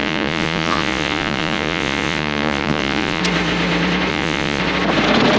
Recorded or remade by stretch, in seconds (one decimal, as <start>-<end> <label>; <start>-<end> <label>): 0.0-3.2 remade; 3.2-4.1 recorded; 4.1-4.6 remade; 4.6-5.4 recorded